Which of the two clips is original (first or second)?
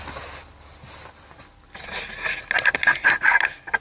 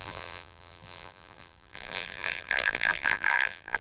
first